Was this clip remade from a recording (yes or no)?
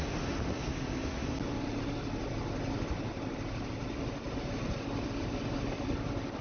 no